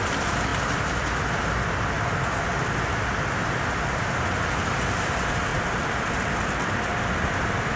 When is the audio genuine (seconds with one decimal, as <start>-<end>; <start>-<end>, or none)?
0.0-7.8